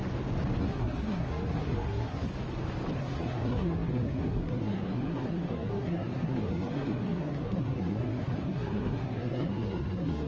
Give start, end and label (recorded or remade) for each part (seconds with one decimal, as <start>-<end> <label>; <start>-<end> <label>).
0.0-0.6 recorded; 0.6-2.3 remade; 2.3-3.0 recorded; 3.0-10.3 remade